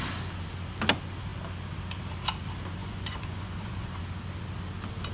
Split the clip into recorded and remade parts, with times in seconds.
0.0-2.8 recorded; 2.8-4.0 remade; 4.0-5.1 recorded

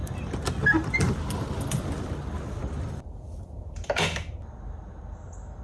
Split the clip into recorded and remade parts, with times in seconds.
0.0-3.4 remade; 3.4-5.6 recorded

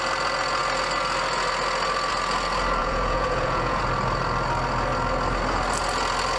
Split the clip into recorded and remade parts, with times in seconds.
0.0-2.8 recorded; 2.8-3.8 remade; 3.8-6.4 recorded